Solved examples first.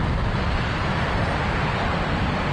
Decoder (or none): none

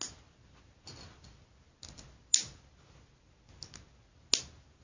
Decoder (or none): none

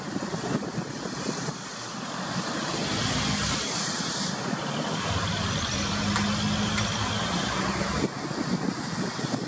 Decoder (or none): none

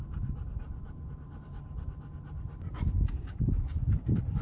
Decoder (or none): none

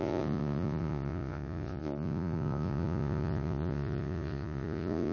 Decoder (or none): vocoder, Vocos